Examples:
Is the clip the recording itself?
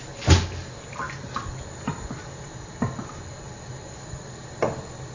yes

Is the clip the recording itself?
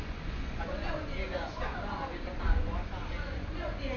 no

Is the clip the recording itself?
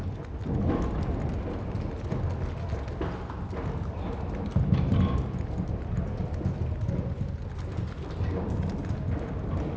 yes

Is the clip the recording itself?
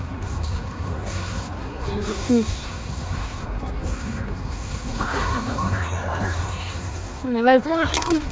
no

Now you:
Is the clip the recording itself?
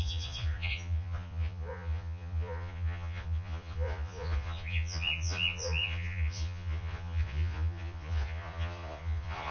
no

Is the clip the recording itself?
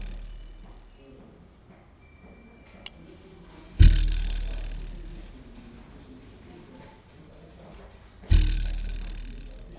yes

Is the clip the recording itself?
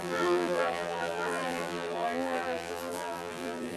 no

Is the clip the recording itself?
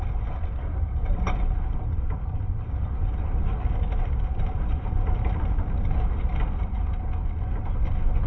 yes